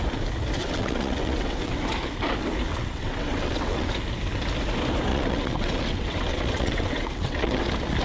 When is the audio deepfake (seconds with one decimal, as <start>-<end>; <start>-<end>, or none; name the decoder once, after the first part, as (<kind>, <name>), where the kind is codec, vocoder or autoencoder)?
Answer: 0.6-1.8 (vocoder, WaveNeXt); 2.7-3.9; 5.1-7.6